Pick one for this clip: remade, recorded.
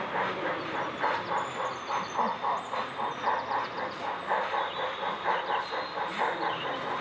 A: recorded